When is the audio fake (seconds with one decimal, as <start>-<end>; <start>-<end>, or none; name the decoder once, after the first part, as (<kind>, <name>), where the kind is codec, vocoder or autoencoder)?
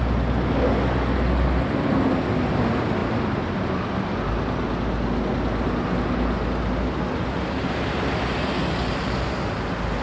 none